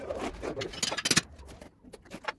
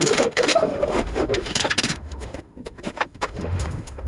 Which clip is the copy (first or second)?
second